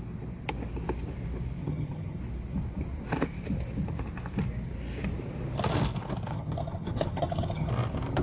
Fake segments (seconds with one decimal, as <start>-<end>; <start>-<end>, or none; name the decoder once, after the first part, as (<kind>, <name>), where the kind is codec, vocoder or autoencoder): 1.6-2.2 (vocoder, HiFi-GAN); 6.3-7.7